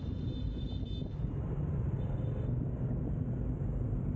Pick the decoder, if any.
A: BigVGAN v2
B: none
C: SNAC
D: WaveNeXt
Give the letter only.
B